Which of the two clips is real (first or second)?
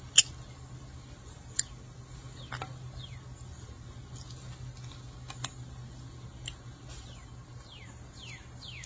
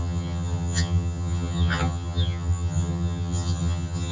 first